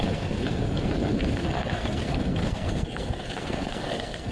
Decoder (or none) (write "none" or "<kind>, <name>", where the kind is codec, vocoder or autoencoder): codec, SNAC